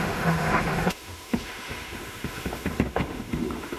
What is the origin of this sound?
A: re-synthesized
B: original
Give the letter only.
A